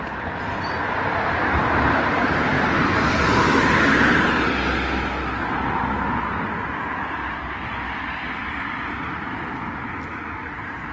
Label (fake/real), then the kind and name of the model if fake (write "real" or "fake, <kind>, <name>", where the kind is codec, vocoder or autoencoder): real